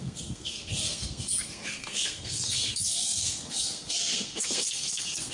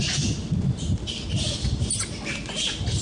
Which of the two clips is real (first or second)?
second